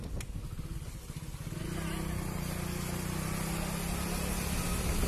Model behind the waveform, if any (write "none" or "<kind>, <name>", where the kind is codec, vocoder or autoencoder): none